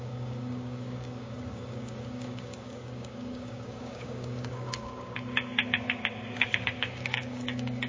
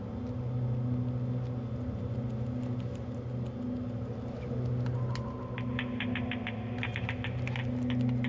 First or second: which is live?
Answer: second